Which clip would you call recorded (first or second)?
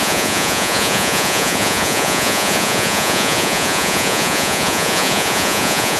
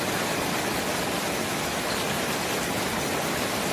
second